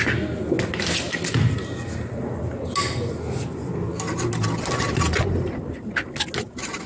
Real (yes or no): yes